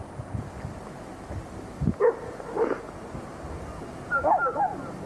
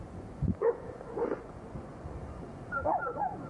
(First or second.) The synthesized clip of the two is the second